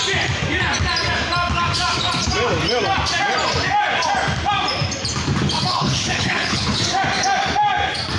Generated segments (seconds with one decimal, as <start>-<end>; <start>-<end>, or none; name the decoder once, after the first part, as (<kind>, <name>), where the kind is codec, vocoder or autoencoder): 5.7-6.8 (codec, HILCodec)